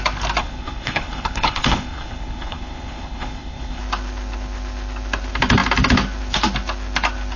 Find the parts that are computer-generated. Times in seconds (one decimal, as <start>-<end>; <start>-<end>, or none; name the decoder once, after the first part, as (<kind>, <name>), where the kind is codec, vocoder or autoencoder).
0.4-3.8 (codec, HILCodec)